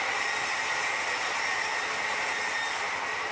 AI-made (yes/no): no